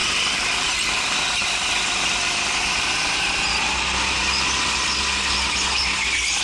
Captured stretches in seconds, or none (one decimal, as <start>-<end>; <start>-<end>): 2.6-6.4